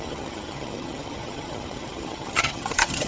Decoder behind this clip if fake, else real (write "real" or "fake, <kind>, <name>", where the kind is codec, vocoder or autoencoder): fake, vocoder, HiFi-GAN